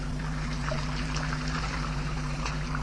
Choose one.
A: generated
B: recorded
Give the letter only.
A